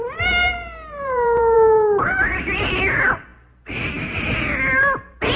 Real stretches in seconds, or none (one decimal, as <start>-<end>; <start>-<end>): 0.0-0.4; 2.8-5.4